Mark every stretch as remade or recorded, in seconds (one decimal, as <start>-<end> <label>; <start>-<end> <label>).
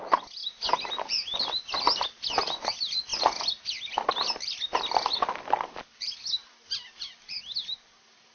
0.0-8.3 recorded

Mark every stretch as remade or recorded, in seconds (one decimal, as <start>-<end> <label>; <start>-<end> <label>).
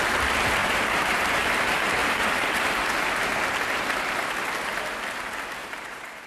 0.0-0.6 recorded; 0.6-1.5 remade; 1.5-2.0 recorded; 2.0-2.9 remade; 2.9-5.6 recorded; 5.6-6.3 remade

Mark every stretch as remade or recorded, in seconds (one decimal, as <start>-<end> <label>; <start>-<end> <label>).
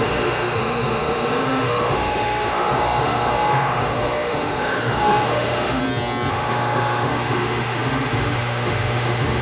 0.0-5.8 remade; 5.8-6.3 recorded; 6.3-9.4 remade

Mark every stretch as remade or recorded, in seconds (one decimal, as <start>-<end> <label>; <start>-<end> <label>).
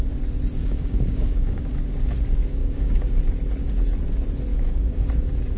0.0-0.6 recorded; 0.6-1.6 remade; 1.6-2.6 recorded; 2.6-3.2 remade; 3.2-4.5 recorded; 4.5-5.1 remade; 5.1-5.6 recorded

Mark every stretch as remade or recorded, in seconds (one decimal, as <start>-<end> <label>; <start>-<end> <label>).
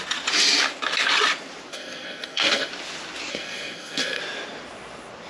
0.0-1.7 recorded; 1.7-2.7 remade; 2.7-3.3 recorded; 3.3-4.2 remade; 4.2-5.3 recorded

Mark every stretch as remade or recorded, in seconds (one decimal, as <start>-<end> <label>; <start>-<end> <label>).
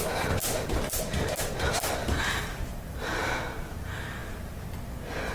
0.0-0.4 recorded; 0.4-1.0 remade; 1.0-2.0 recorded; 2.0-3.4 remade; 3.4-5.3 recorded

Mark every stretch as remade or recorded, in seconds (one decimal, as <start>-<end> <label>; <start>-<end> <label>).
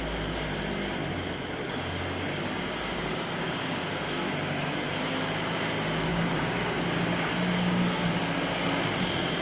0.0-1.6 recorded; 1.6-3.8 remade; 3.8-6.1 recorded; 6.1-8.1 remade; 8.1-9.4 recorded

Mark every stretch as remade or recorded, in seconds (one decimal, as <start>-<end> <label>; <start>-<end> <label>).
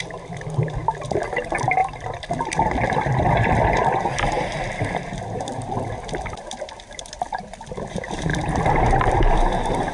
0.0-1.8 remade; 1.8-2.3 recorded; 2.3-8.3 remade; 8.3-9.1 recorded; 9.1-9.9 remade